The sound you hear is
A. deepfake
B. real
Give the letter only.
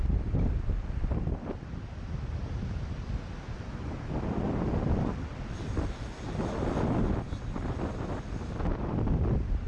B